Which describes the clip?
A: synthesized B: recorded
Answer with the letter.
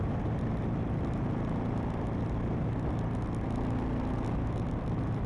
B